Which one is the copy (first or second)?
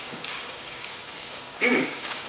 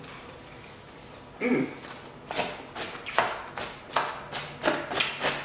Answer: first